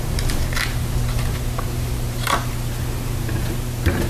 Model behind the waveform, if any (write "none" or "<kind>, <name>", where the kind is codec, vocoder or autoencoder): none